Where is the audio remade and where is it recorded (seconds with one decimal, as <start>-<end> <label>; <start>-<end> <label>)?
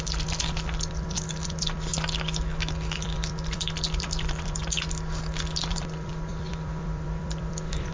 0.0-1.9 remade; 1.9-2.7 recorded; 2.7-4.6 remade; 4.6-5.7 recorded; 5.7-7.9 remade